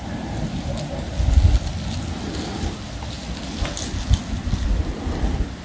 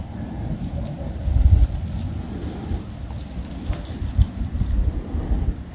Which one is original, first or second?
first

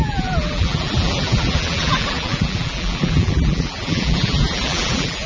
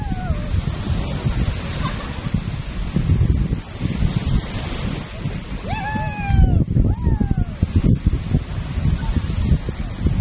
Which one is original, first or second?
second